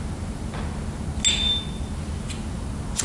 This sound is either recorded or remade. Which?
recorded